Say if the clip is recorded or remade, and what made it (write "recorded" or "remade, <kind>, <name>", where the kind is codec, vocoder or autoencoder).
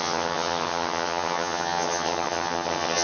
remade, vocoder, HiFi-GAN